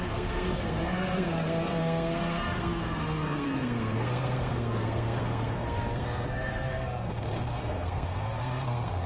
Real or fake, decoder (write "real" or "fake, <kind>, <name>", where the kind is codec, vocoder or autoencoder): fake, codec, SNAC